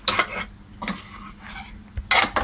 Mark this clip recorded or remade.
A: recorded